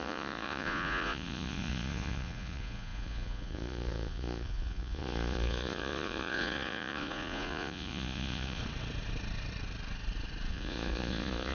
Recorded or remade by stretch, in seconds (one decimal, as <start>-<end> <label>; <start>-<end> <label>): 0.0-8.6 remade; 8.6-10.5 recorded; 10.5-11.5 remade